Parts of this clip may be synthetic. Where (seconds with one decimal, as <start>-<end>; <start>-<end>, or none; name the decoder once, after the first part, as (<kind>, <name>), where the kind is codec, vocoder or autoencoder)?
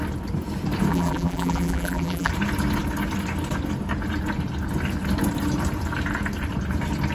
0.9-2.3 (vocoder, BigVGAN v2)